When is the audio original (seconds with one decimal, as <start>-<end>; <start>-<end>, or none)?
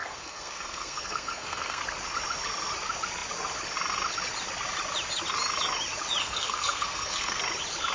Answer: 1.8-6.2; 7.4-7.9